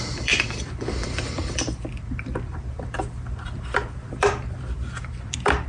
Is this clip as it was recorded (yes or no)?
no